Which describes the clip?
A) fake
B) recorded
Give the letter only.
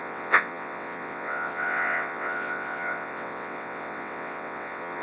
A